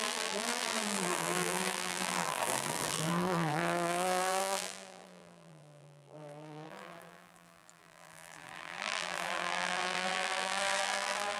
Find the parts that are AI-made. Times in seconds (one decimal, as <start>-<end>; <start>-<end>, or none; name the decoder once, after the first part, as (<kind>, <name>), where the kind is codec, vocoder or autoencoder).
0.0-11.4 (vocoder, BigVGAN v2)

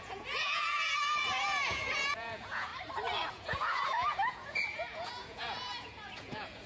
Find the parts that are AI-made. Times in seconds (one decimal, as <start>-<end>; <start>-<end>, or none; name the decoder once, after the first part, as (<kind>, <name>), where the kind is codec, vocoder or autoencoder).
0.0-2.7 (vocoder, Vocos); 3.3-6.7

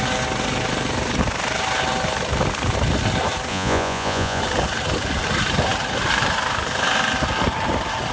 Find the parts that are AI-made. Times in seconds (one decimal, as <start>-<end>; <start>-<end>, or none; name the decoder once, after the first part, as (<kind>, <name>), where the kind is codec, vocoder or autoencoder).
3.5-4.4 (vocoder, Vocos)

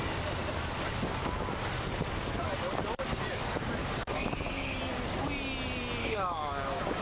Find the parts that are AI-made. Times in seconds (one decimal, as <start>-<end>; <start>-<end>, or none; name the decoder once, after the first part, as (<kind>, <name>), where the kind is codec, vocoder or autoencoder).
0.9-1.5 (codec, DAC); 3.8-4.8; 6.0-7.0

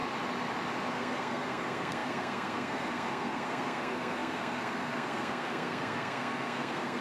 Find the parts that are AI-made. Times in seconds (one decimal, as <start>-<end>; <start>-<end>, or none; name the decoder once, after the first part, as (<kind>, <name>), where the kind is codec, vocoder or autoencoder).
0.9-7.0 (codec, SNAC)